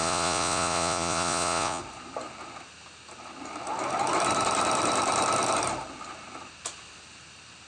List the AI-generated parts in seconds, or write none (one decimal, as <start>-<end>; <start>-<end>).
0.0-1.8

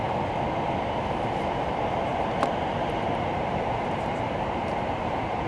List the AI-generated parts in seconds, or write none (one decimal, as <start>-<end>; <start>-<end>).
2.1-5.5

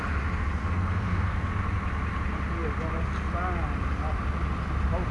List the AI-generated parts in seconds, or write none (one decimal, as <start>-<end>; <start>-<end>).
0.6-1.5

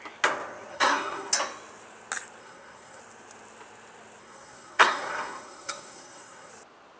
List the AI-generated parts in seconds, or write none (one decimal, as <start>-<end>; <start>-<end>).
0.7-1.3; 2.4-3.0; 4.2-6.5